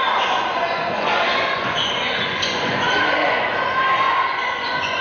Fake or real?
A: fake